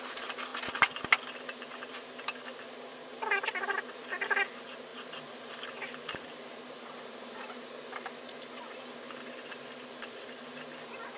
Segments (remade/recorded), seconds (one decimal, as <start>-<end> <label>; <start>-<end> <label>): 0.0-11.2 recorded